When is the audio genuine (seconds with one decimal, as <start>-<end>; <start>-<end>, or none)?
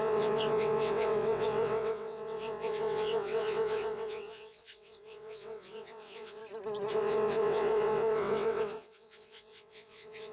6.4-6.9